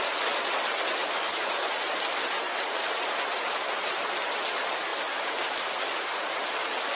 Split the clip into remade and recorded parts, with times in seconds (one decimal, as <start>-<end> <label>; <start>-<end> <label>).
0.0-7.0 recorded

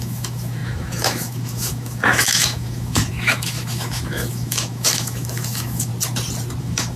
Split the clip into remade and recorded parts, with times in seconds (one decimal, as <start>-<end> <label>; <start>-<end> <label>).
0.0-5.9 remade; 5.9-6.6 recorded; 6.6-7.0 remade

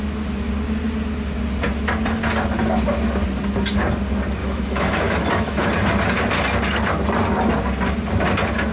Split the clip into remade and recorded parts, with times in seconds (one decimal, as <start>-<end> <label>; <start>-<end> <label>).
0.0-4.4 recorded; 4.4-5.7 remade; 5.7-8.7 recorded